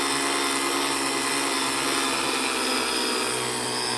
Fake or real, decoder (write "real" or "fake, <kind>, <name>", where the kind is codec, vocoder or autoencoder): real